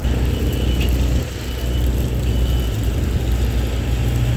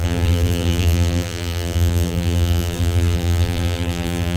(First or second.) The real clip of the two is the first